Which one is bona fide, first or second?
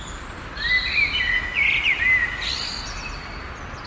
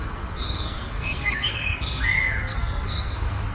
first